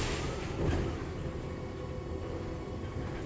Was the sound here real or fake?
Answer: real